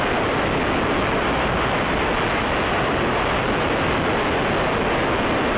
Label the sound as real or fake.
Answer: real